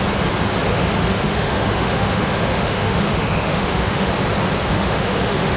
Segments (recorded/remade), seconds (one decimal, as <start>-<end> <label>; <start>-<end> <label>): 0.0-0.7 recorded; 0.7-4.1 remade; 4.1-4.7 recorded; 4.7-5.6 remade